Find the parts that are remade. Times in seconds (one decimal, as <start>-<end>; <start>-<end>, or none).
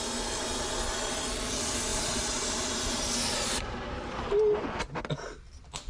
1.9-4.8